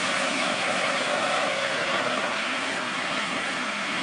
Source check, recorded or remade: remade